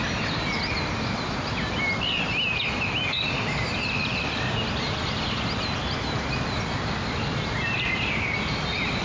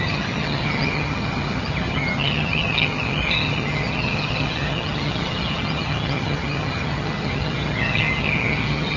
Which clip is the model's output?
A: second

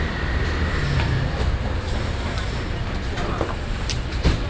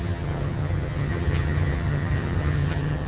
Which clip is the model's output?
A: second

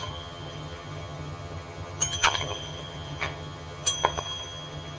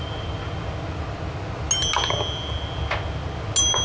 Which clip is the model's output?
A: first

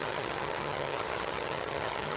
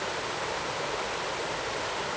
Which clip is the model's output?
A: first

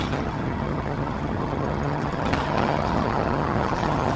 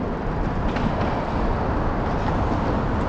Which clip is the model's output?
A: first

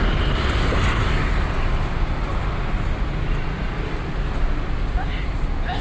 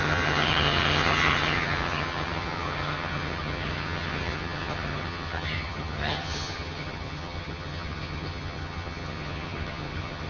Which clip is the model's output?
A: second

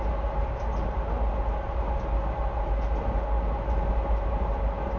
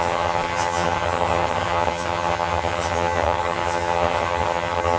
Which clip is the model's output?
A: second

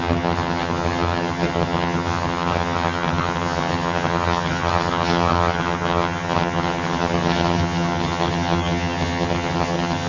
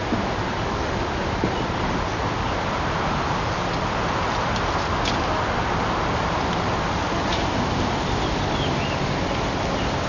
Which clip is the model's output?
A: first